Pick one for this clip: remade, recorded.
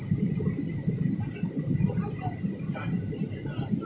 recorded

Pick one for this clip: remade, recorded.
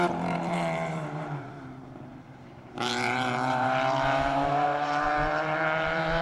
remade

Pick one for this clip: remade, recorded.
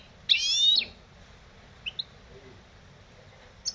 recorded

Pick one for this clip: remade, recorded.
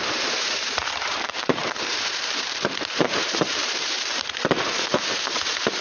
remade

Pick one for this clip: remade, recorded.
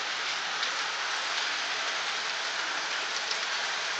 remade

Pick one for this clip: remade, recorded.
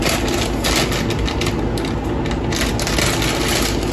recorded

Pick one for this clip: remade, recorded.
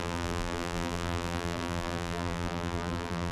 remade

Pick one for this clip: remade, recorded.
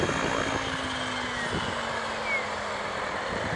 recorded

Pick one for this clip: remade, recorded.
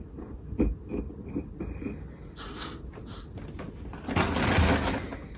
recorded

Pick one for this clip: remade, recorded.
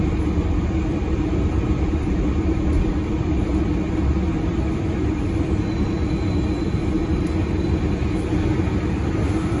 recorded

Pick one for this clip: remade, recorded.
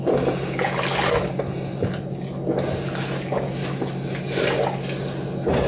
recorded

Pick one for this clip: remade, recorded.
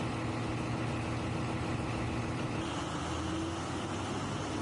recorded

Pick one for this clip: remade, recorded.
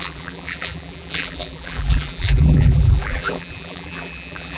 remade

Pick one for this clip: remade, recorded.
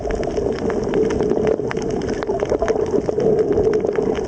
recorded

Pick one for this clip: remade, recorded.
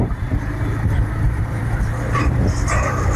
remade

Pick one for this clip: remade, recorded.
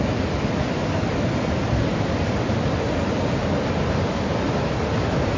recorded